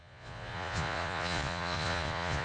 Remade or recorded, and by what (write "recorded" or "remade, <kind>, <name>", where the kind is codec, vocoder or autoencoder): remade, vocoder, Vocos